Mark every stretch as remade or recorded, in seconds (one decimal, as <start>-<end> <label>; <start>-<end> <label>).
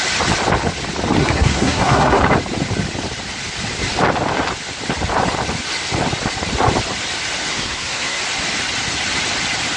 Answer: 0.0-1.2 recorded; 1.2-2.2 remade; 2.2-7.5 recorded; 7.5-8.2 remade; 8.2-9.8 recorded